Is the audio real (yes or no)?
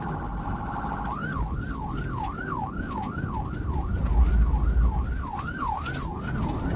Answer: yes